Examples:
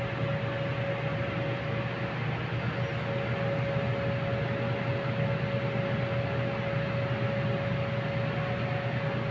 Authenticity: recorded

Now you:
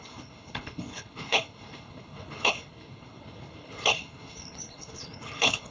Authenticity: remade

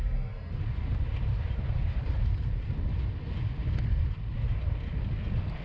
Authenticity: recorded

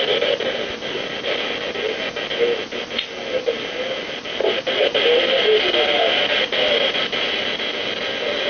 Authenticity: recorded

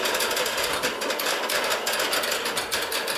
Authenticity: recorded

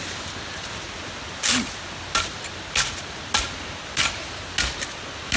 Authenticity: recorded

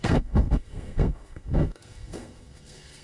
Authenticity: remade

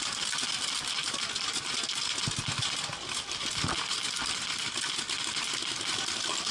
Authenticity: recorded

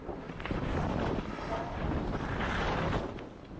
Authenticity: recorded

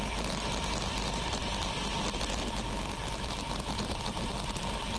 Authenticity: recorded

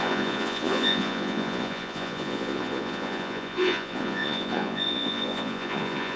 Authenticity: remade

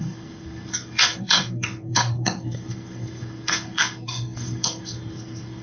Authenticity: remade